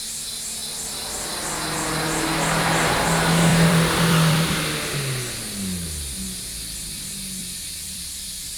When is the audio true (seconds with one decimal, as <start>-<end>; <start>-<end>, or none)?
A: 0.0-0.6; 1.4-3.5; 4.6-7.4